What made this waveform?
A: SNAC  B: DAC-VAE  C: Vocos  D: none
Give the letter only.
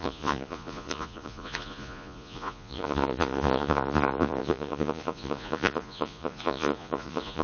C